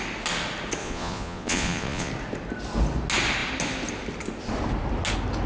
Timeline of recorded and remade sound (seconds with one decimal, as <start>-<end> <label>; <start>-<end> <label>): 0.0-0.8 recorded; 0.8-2.1 remade; 2.1-5.5 recorded